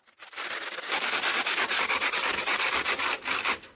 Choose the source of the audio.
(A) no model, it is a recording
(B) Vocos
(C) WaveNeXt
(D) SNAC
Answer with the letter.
A